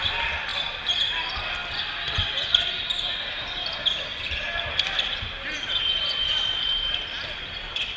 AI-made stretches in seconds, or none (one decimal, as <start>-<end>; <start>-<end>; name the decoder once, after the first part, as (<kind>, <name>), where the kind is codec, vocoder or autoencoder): 0.5-1.0 (vocoder, BigVGAN v2); 4.1-8.0